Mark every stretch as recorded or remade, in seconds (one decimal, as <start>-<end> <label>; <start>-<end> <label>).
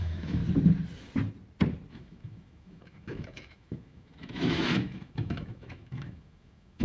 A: 0.0-0.4 remade; 0.4-1.9 recorded; 1.9-6.8 remade